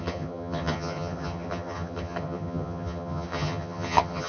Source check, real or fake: fake